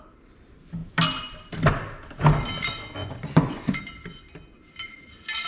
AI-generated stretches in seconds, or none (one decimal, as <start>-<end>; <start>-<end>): 3.0-3.8